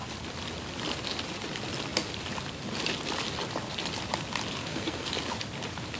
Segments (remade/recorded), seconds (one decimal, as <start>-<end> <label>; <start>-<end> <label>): 0.0-4.6 recorded; 4.6-5.1 remade; 5.1-6.0 recorded